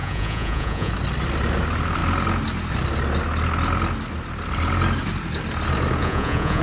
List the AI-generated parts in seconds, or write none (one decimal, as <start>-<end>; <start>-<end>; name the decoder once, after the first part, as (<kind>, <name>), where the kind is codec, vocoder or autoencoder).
0.0-0.9 (vocoder, Vocos); 6.0-6.6